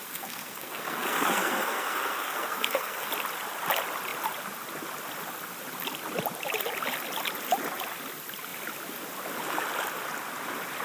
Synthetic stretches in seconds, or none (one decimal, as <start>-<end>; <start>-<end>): 0.0-3.1